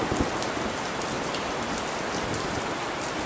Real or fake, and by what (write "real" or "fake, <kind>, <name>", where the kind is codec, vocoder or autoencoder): real